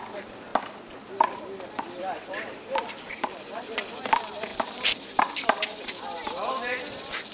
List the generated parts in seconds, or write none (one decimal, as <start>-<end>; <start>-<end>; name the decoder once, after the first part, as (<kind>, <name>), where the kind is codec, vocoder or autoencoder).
none